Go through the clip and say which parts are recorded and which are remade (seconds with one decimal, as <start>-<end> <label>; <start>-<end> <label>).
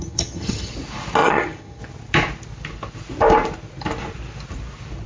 0.0-0.7 remade; 0.7-1.2 recorded; 1.2-1.8 remade; 1.8-5.1 recorded